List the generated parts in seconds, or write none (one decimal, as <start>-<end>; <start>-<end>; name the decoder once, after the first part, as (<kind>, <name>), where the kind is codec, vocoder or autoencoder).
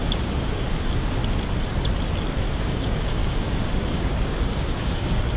0.0-1.2 (codec, DAC); 2.5-5.4